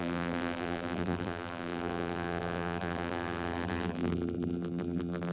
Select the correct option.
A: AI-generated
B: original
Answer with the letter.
A